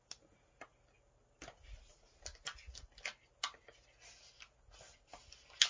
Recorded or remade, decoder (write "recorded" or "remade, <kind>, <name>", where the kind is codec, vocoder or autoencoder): recorded